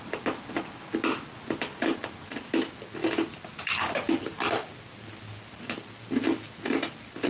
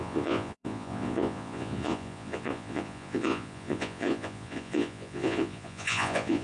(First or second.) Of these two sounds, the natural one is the first